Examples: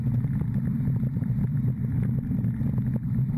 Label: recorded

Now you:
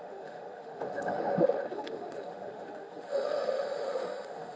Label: remade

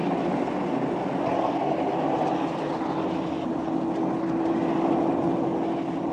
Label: recorded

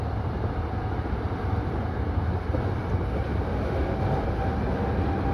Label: recorded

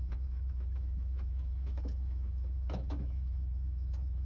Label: remade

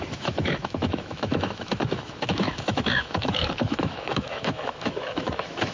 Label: remade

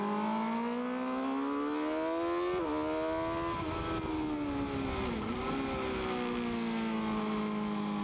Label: recorded